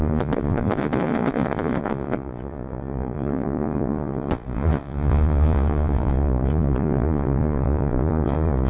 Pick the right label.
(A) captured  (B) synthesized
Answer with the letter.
B